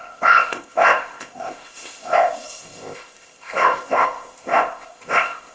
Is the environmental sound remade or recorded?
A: remade